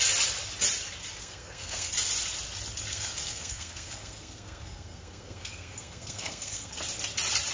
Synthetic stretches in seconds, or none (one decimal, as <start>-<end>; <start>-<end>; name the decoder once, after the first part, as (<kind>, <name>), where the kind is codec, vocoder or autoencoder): 1.2-1.9 (codec, SNAC); 2.9-6.7